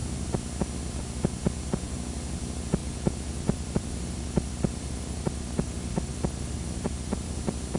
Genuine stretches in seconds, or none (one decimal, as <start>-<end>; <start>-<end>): 0.0-2.8; 7.3-7.8